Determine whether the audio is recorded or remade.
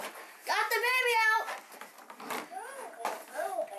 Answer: recorded